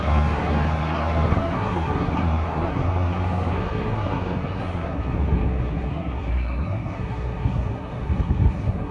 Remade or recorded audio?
remade